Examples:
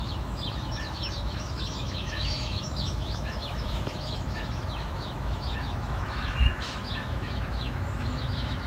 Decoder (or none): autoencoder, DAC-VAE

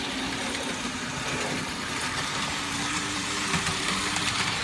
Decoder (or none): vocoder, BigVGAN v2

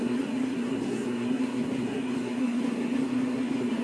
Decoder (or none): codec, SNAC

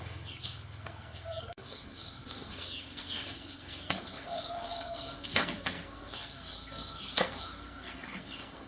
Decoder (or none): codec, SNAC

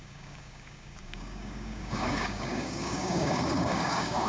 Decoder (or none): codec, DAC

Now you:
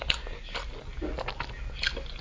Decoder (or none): none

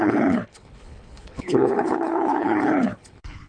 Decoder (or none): codec, HILCodec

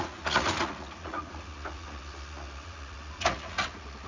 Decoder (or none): vocoder, Vocos